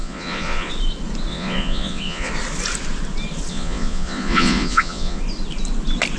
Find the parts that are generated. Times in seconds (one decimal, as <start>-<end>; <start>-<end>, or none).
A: 0.0-0.7; 1.3-2.3; 3.5-5.2